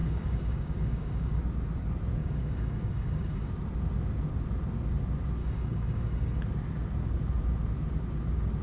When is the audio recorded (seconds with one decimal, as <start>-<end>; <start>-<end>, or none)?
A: 1.4-2.2; 3.5-5.4; 6.4-8.6